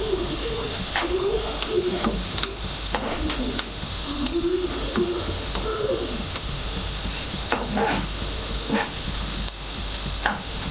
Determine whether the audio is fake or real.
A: fake